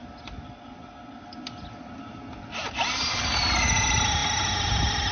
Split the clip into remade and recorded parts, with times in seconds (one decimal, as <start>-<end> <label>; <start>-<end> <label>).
0.0-5.1 recorded